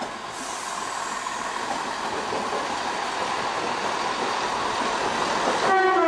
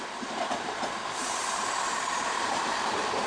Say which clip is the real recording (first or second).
first